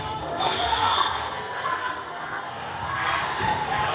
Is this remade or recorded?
remade